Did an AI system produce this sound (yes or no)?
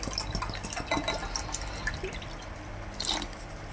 no